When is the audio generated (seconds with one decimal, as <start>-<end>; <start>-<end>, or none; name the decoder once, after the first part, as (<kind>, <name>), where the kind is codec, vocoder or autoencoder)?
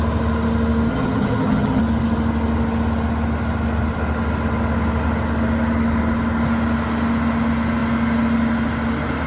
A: 0.9-1.8 (vocoder, HiFi-GAN)